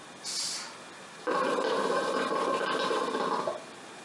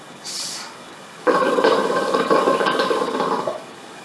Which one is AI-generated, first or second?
second